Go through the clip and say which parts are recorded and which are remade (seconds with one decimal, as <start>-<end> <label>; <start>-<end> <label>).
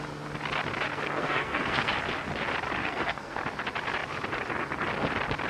0.0-0.9 recorded; 0.9-1.9 remade; 1.9-2.8 recorded; 2.8-3.4 remade; 3.4-5.5 recorded